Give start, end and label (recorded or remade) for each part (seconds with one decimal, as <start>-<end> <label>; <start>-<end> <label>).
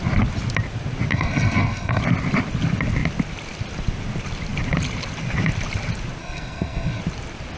0.0-1.1 recorded; 1.1-2.0 remade; 2.0-6.2 recorded; 6.2-7.0 remade; 7.0-7.6 recorded